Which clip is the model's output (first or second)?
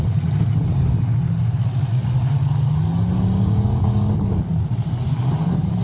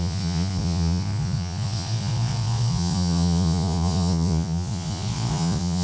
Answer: second